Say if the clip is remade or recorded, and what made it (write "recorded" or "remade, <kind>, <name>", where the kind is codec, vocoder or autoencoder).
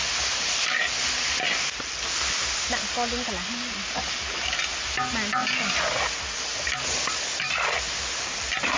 recorded